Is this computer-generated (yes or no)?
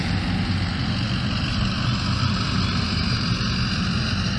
no